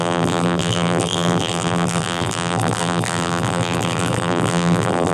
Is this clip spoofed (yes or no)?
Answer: yes